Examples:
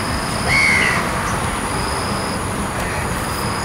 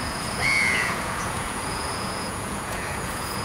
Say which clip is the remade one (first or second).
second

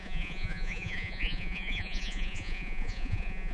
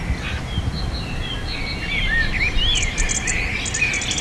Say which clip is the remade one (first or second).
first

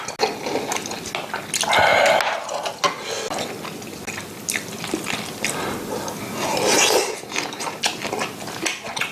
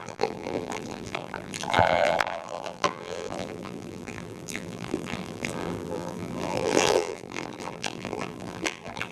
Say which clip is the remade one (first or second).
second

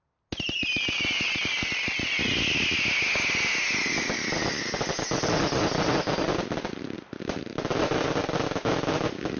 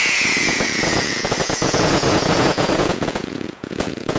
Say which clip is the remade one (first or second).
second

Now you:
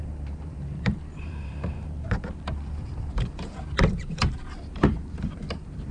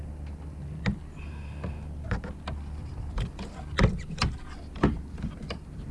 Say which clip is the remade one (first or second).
first